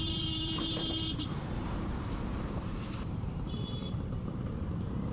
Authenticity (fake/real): fake